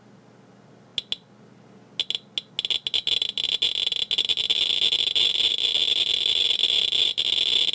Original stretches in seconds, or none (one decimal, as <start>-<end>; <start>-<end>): 0.0-7.7